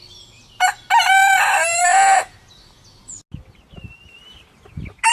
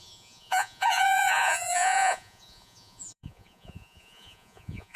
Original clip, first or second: first